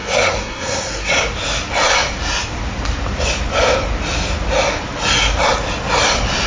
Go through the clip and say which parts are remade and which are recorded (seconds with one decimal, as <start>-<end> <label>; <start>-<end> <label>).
0.0-1.1 remade; 1.1-6.5 recorded